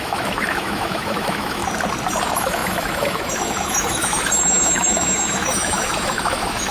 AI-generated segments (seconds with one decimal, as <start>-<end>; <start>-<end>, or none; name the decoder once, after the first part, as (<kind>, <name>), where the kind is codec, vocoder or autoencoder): 0.0-1.6 (autoencoder, DAC-VAE); 2.2-6.7